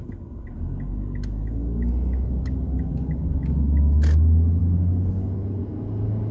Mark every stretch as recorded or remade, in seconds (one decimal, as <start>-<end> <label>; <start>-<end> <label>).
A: 0.0-6.3 recorded